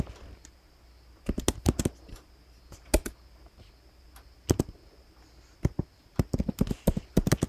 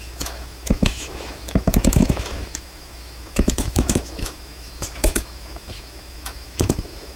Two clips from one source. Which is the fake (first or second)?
second